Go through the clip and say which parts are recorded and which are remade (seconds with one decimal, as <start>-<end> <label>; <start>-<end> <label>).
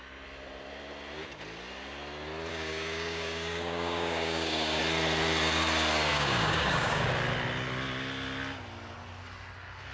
0.0-2.5 recorded; 2.5-4.8 remade; 4.8-6.1 recorded; 6.1-7.1 remade; 7.1-9.9 recorded